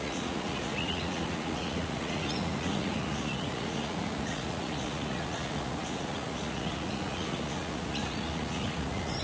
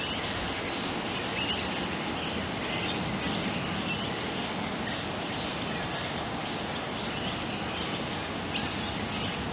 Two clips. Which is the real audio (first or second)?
second